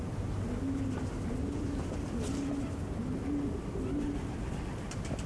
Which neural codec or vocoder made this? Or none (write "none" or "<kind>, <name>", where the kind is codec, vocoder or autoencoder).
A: none